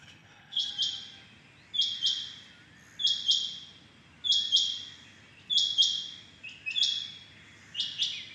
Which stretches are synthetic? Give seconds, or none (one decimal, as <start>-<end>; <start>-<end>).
0.0-0.7